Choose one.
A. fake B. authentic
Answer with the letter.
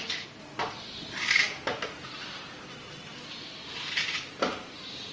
B